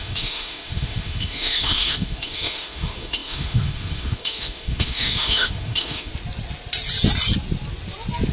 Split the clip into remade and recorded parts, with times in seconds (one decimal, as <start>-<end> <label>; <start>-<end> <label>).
0.0-6.1 remade; 6.1-8.3 recorded